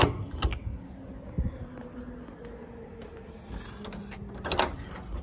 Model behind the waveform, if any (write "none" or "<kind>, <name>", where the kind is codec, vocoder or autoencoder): none